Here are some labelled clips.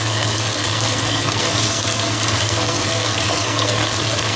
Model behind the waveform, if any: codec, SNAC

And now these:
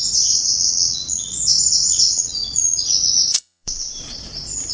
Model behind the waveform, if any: vocoder, Vocos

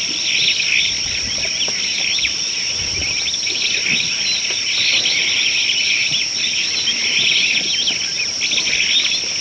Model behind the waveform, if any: none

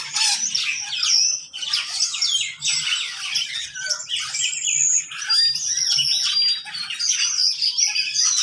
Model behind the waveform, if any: none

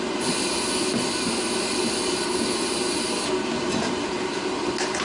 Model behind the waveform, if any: none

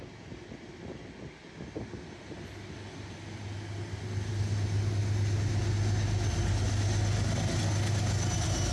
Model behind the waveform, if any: none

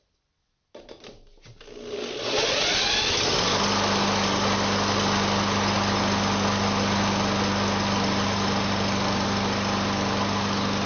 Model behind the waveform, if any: none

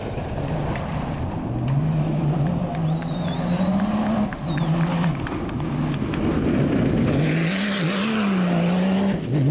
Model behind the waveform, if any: none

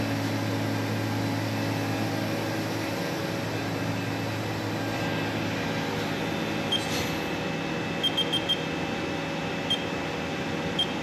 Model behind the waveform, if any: none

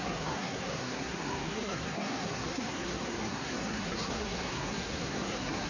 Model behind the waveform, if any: codec, SNAC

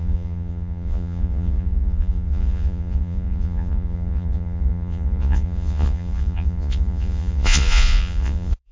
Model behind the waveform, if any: vocoder, Vocos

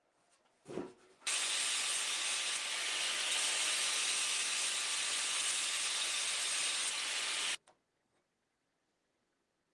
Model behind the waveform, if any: vocoder, Vocos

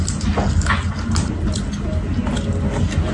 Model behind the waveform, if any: none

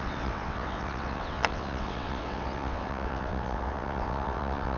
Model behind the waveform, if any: vocoder, WaveNeXt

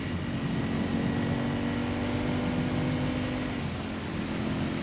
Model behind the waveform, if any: none